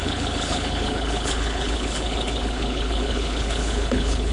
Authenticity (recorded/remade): remade